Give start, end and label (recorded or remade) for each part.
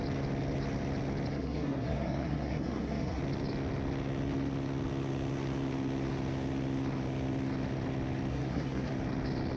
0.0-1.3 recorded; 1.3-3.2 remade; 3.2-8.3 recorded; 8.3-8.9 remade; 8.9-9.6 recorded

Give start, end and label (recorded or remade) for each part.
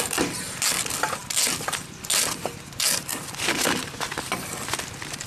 0.0-5.3 recorded